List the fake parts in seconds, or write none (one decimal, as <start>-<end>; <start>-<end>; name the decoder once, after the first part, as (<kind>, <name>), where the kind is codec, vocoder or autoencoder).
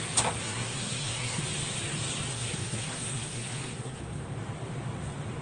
0.4-1.4 (codec, SNAC); 2.3-4.0